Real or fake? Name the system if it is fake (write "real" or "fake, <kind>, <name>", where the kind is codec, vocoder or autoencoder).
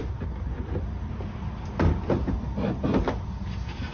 real